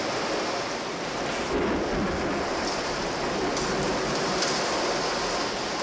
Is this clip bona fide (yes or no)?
yes